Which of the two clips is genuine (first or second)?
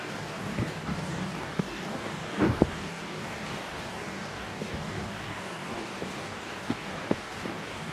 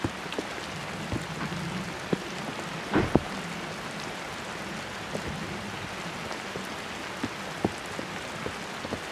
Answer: second